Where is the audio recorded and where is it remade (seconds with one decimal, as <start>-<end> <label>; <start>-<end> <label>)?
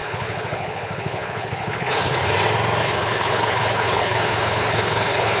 0.0-2.3 remade; 2.3-2.8 recorded; 2.8-5.4 remade